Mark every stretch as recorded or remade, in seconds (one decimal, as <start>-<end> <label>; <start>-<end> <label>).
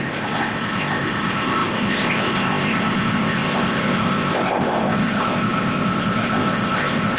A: 0.0-7.2 remade